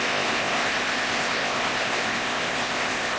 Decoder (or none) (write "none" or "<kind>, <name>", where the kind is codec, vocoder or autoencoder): codec, ZipCodec